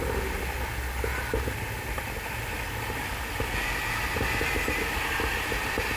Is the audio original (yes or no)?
yes